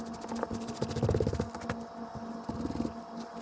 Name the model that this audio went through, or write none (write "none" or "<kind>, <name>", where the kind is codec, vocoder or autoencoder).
none